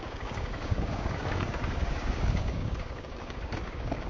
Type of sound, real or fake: fake